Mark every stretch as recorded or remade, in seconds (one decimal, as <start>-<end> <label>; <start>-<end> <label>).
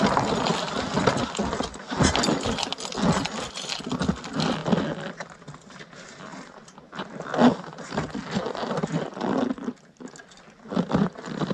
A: 0.0-11.5 recorded